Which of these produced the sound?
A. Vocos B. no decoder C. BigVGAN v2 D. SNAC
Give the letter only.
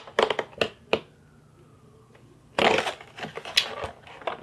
B